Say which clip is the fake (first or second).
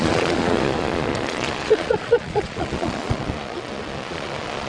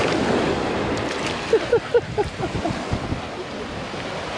first